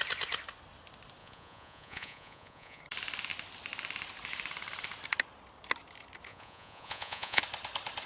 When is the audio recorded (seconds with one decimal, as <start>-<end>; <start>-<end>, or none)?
0.0-1.2; 2.8-6.3; 7.4-8.1